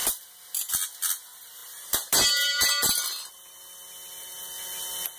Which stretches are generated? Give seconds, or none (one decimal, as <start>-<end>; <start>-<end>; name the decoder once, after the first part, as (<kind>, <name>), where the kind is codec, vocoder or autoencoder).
none